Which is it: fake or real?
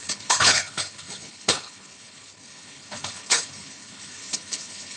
fake